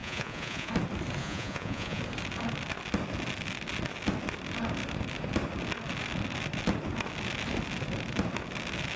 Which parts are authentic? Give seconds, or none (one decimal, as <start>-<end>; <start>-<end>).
0.7-1.2; 2.0-9.0